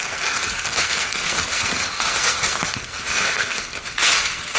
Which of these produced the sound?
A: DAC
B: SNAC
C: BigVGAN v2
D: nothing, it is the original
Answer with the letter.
B